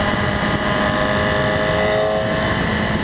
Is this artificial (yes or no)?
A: no